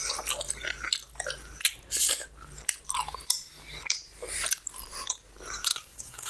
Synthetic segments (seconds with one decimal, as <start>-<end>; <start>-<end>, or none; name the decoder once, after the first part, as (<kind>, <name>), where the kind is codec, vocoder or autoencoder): 5.7-6.3 (codec, SNAC)